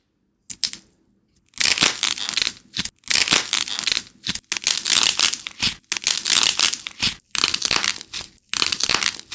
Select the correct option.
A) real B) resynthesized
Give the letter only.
A